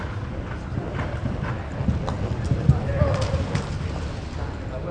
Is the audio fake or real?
real